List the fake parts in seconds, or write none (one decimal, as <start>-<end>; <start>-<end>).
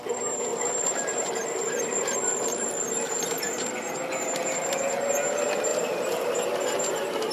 0.5-3.7; 5.7-6.3